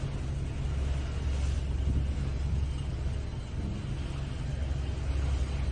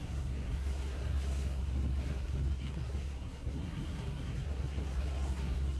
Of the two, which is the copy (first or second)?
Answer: second